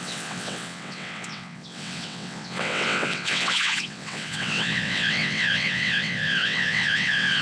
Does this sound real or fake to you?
fake